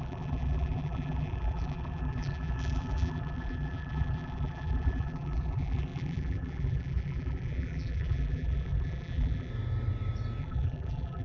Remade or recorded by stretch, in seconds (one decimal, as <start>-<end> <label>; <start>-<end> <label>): 0.0-9.5 remade; 9.5-10.4 recorded; 10.4-11.2 remade